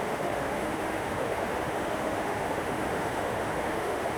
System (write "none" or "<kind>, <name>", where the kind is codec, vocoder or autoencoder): autoencoder, DAC-VAE